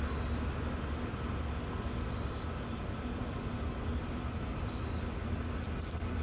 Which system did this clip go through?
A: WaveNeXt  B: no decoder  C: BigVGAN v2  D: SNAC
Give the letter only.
B